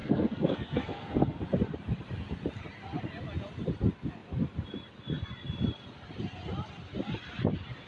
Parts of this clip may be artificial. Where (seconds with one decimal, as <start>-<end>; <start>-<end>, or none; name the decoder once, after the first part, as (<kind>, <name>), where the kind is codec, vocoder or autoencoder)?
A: 0.0-1.4 (codec, SNAC)